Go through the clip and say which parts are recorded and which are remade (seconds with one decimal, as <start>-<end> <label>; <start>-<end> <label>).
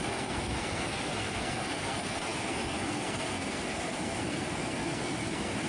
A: 0.0-5.7 remade